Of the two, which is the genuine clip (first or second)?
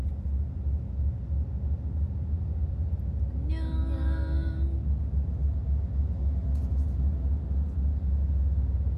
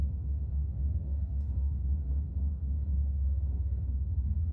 first